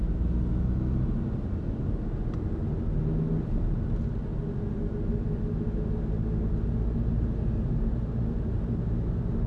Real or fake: real